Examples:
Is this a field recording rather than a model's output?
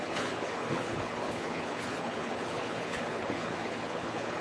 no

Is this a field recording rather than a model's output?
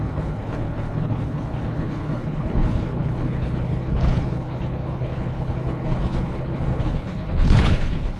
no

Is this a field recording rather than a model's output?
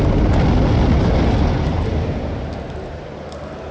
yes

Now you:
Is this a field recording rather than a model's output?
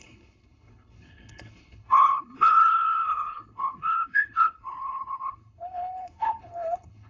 no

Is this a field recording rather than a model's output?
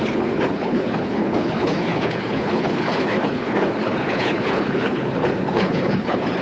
no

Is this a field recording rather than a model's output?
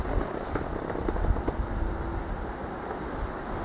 yes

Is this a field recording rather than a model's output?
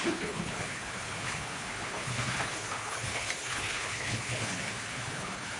no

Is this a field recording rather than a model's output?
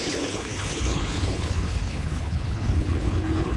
no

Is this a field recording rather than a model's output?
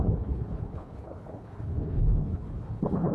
no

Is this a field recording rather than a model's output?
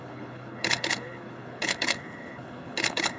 no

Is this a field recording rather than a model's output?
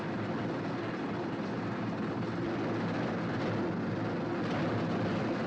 yes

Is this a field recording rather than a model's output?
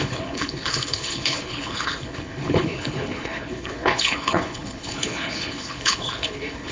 no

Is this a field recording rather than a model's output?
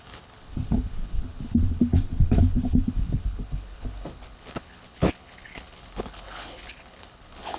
no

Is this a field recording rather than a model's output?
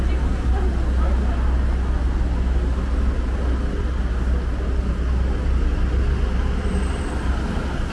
yes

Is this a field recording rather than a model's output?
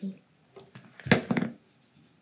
yes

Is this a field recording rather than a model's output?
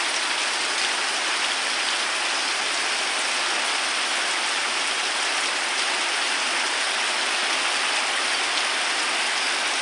yes